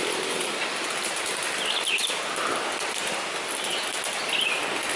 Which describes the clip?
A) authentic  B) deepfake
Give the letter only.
A